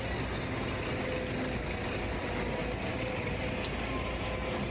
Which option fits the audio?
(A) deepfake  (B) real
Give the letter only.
B